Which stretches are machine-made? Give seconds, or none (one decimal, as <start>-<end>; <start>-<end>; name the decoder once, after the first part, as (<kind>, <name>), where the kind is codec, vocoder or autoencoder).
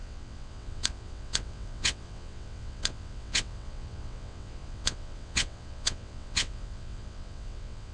0.0-7.9 (vocoder, WaveNeXt)